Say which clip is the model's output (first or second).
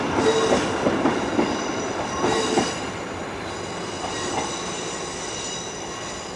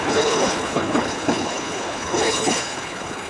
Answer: second